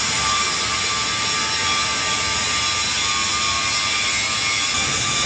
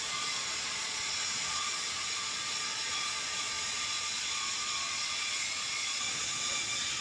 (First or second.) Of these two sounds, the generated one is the second